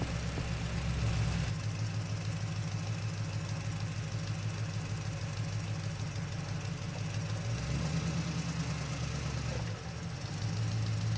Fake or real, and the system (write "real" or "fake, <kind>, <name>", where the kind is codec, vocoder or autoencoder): real